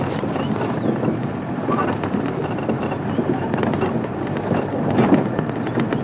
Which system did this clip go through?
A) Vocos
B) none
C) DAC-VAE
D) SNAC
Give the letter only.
B